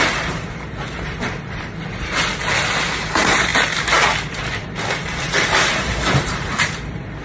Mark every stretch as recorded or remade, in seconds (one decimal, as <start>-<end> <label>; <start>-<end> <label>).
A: 0.0-2.3 remade; 2.3-2.9 recorded; 2.9-3.5 remade; 3.5-6.2 recorded; 6.2-7.2 remade